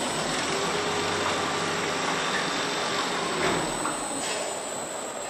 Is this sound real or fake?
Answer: real